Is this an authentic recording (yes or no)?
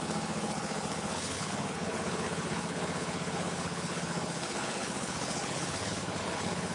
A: no